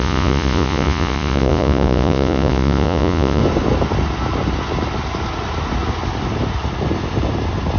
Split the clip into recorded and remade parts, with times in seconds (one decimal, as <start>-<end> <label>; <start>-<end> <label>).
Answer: 0.0-3.4 remade; 3.4-7.8 recorded